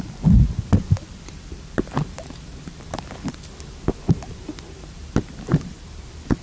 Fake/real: fake